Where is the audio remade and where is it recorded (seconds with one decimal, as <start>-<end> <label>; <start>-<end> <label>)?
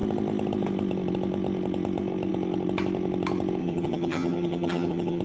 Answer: 0.0-3.6 recorded; 3.6-5.2 remade